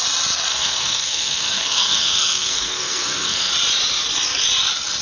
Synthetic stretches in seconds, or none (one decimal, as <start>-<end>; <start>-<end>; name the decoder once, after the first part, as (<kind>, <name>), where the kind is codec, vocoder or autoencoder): 0.5-3.5 (codec, SNAC)